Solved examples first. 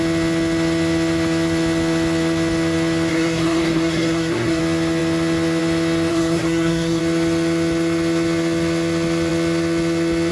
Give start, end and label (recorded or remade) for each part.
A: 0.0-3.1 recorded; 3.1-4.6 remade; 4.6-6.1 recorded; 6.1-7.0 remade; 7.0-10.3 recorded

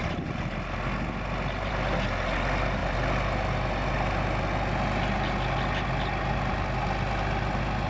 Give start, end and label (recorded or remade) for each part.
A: 0.0-7.9 recorded

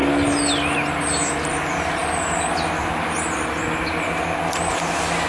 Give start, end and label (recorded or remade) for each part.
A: 0.0-5.3 recorded

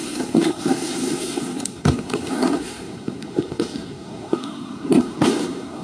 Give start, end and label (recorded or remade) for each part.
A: 0.0-5.8 remade

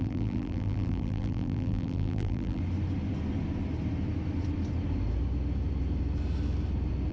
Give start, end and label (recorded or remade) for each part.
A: 0.0-2.6 remade; 2.6-7.1 recorded

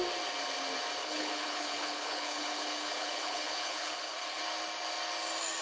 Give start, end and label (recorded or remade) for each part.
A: 0.0-1.0 recorded; 1.0-4.4 remade; 4.4-5.6 recorded

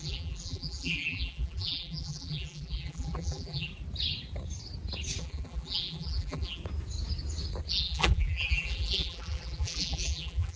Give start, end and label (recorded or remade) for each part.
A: 0.0-3.7 remade; 3.7-5.2 recorded; 5.2-6.6 remade; 6.6-7.7 recorded; 7.7-10.6 remade